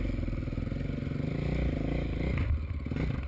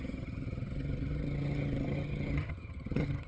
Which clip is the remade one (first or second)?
second